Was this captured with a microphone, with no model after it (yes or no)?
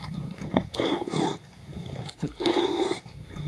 no